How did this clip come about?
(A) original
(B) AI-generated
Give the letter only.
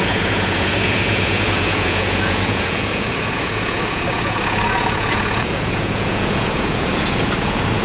B